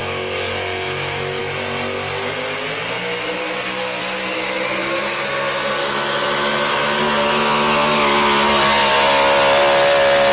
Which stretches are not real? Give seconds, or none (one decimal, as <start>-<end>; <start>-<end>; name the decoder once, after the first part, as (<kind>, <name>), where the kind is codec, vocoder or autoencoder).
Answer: 0.0-1.4 (autoencoder, DAC-VAE); 4.0-5.3; 5.8-7.0